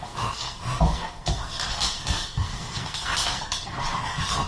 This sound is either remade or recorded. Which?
remade